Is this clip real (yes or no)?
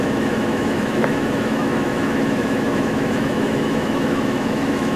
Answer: no